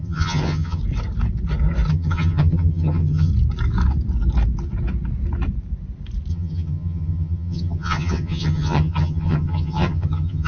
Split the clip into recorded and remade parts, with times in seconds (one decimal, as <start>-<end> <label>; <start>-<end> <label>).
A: 0.0-0.8 remade; 0.8-1.9 recorded; 1.9-3.3 remade; 3.3-6.3 recorded; 6.3-10.5 remade